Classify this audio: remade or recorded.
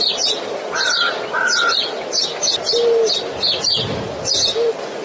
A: recorded